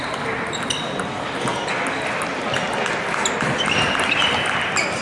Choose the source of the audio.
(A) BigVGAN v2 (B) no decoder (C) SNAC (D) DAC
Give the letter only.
B